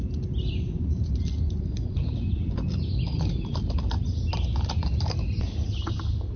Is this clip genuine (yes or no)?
yes